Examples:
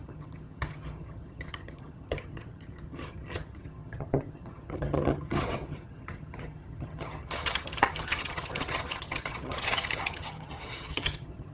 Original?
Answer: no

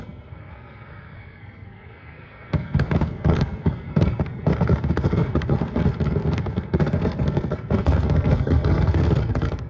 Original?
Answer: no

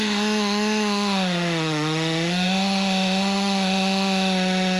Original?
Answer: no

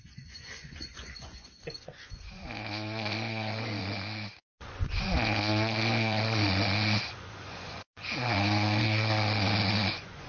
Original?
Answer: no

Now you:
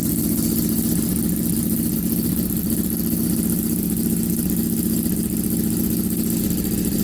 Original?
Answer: yes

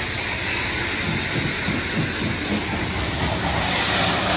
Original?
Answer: yes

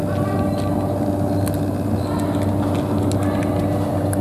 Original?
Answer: yes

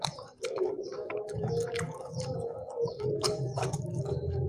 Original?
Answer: no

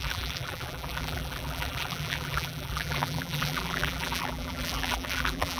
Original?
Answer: no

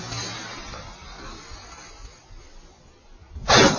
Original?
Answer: yes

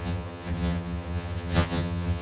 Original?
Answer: no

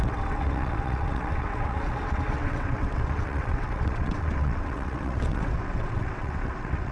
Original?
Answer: no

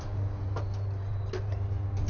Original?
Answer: yes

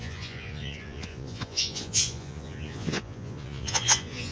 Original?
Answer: no